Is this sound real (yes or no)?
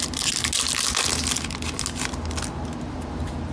yes